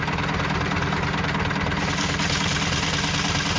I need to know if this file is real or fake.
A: real